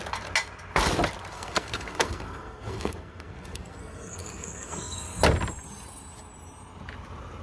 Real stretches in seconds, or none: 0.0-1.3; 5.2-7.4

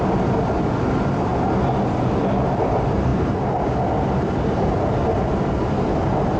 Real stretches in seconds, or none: 0.0-6.4